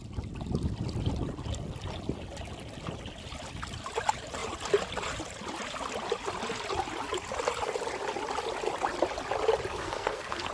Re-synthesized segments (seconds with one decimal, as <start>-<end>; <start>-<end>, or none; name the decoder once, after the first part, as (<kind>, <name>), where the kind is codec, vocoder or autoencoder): 9.7-10.5 (codec, SNAC)